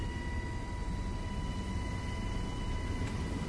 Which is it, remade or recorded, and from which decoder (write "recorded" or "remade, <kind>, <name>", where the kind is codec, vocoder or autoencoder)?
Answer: recorded